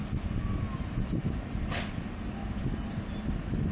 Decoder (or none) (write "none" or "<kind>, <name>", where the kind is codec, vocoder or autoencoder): none